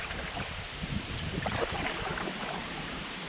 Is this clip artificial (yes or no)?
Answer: yes